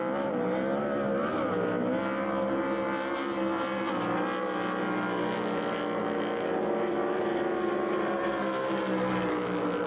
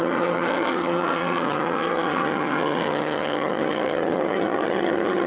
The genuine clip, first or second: first